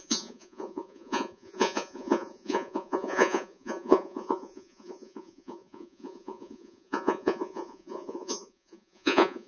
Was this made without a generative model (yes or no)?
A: no